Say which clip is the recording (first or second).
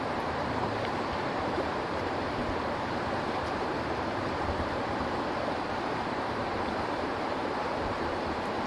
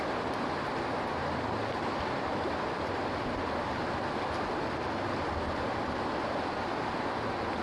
second